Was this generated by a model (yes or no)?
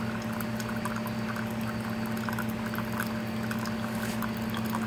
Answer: no